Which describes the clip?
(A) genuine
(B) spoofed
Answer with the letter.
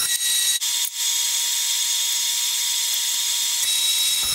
B